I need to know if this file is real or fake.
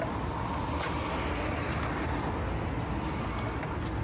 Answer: real